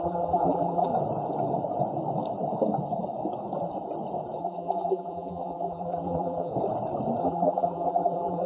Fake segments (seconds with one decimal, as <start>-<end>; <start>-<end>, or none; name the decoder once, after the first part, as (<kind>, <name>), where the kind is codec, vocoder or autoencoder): 0.0-0.9 (vocoder, BigVGAN v2); 4.4-6.5; 7.2-8.5